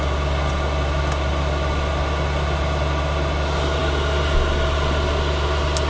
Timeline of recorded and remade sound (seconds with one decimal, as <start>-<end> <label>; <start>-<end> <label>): 0.0-5.9 recorded

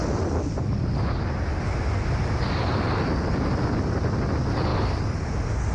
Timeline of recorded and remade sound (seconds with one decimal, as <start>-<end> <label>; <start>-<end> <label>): 0.0-5.7 recorded

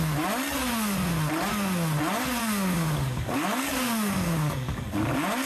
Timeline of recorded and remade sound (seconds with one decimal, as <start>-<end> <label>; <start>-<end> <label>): 0.0-2.4 recorded; 2.4-5.1 remade; 5.1-5.5 recorded

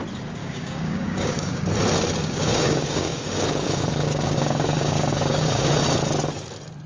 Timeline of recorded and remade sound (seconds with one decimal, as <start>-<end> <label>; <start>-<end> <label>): 0.0-0.4 recorded; 0.4-1.6 remade; 1.6-2.2 recorded; 2.2-5.7 remade; 5.7-6.9 recorded

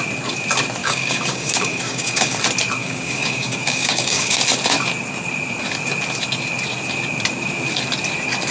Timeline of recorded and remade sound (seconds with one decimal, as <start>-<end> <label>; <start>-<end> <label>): 0.0-0.8 recorded; 0.8-2.4 remade; 2.4-2.8 recorded; 2.8-4.4 remade; 4.4-8.5 recorded

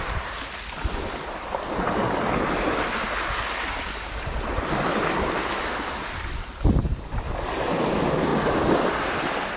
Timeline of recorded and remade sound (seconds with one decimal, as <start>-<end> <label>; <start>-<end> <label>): 0.0-9.6 recorded

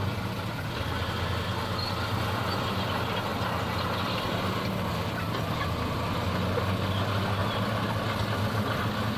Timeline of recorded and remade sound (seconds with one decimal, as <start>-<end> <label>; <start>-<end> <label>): 0.0-9.2 recorded